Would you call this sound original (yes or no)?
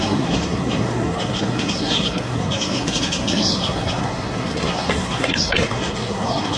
no